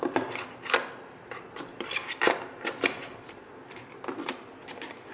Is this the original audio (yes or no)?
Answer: yes